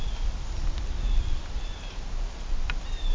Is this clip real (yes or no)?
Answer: yes